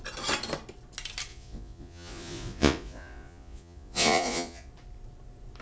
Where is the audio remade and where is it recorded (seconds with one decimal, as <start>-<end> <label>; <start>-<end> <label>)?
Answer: 0.0-1.3 recorded; 1.3-4.7 remade; 4.7-5.6 recorded